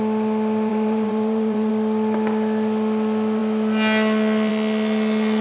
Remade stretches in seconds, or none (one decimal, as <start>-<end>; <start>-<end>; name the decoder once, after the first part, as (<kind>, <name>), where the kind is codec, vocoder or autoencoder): 0.7-1.7 (vocoder, BigVGAN v2)